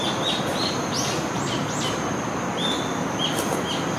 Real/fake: real